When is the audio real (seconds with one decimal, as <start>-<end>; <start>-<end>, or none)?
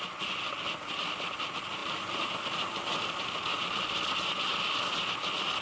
0.0-5.6